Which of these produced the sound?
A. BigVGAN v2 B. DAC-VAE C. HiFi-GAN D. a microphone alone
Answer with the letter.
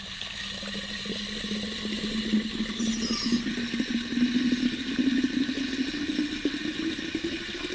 D